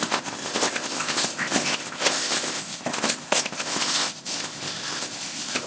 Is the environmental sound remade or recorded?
remade